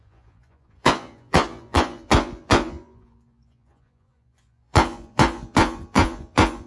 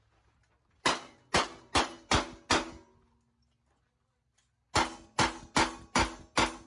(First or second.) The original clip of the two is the second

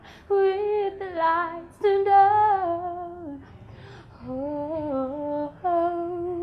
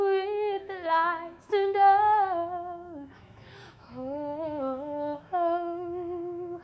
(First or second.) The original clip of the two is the first